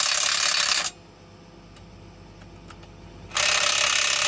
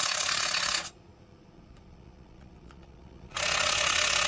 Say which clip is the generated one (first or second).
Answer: second